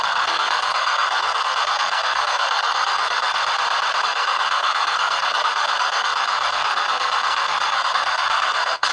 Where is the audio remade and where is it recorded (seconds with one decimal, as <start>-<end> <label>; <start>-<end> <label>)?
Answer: 0.0-3.4 remade; 3.4-4.0 recorded; 4.0-8.9 remade